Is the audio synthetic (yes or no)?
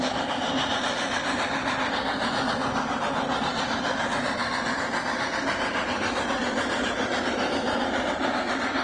yes